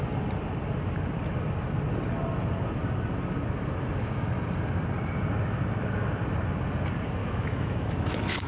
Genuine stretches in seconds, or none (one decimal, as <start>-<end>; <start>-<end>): 0.0-7.2